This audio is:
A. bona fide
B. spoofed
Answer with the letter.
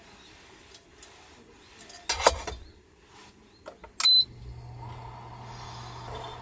A